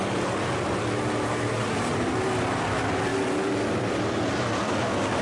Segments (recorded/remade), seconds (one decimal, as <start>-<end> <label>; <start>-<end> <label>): 0.0-5.2 recorded